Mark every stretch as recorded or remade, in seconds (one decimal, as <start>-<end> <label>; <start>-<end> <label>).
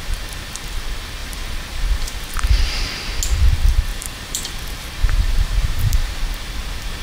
0.0-3.9 recorded; 3.9-4.4 remade; 4.4-5.0 recorded; 5.0-6.2 remade; 6.2-7.0 recorded